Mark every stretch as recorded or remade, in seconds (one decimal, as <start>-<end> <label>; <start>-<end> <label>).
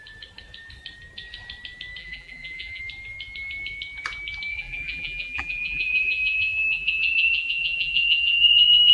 0.0-2.0 recorded; 2.0-2.8 remade; 2.8-4.5 recorded; 4.5-8.9 remade